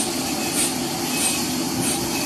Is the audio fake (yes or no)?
no